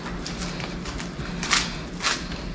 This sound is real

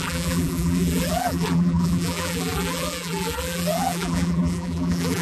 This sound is fake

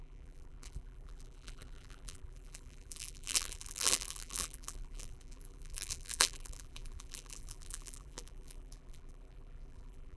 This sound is fake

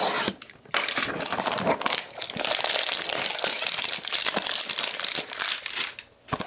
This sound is fake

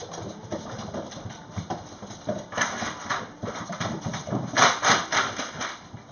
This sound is fake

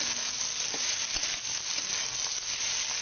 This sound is real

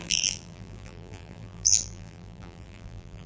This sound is fake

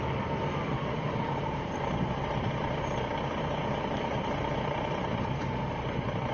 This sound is fake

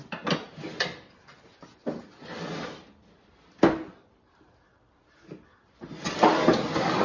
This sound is real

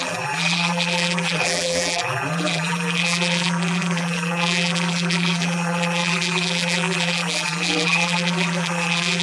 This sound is fake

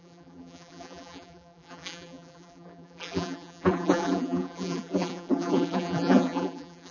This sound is fake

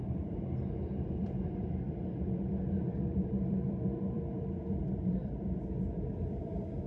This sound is fake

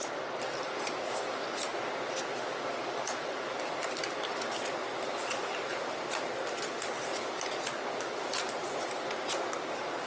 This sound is real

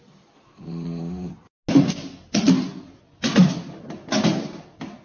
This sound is real